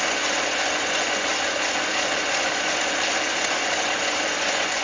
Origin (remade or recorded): remade